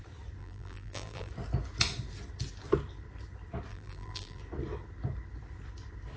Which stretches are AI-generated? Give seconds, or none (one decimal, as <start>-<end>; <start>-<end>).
0.4-1.3; 3.7-4.4

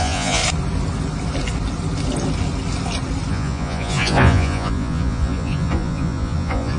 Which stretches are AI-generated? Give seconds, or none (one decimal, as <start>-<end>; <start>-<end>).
0.0-0.4; 3.3-6.8

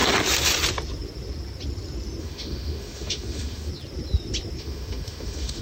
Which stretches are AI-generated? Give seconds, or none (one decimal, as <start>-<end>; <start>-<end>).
2.2-3.7; 4.6-5.6

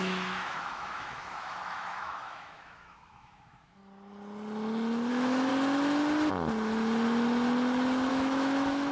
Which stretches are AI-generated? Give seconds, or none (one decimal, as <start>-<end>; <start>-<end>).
0.0-3.8; 5.1-5.5; 8.1-8.9

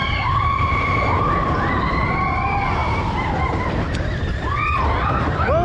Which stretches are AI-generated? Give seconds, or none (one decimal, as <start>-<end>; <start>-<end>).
0.0-1.2; 2.8-3.7

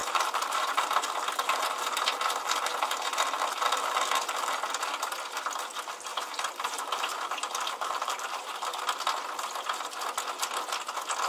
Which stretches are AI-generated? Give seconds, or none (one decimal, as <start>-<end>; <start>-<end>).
0.0-4.6; 6.1-8.8